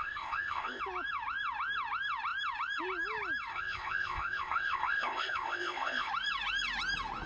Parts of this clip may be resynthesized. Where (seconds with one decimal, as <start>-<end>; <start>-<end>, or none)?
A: 0.0-0.8; 3.5-6.1